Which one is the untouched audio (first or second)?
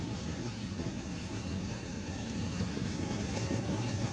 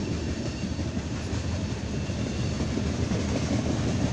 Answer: second